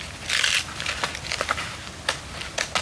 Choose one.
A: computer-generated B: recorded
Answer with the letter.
B